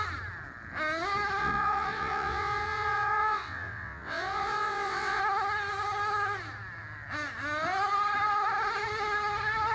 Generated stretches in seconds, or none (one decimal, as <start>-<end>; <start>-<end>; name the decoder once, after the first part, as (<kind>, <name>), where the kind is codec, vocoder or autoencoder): 1.4-5.2 (vocoder, WaveNeXt)